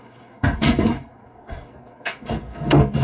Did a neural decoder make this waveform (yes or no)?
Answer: yes